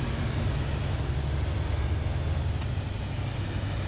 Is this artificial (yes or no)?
no